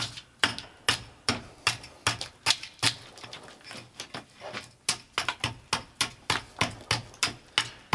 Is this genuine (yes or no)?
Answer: yes